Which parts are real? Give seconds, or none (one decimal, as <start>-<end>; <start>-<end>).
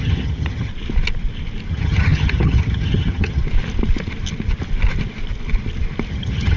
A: 0.7-1.7; 3.4-6.1